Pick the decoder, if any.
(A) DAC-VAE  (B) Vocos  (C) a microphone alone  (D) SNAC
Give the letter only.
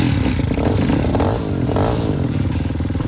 C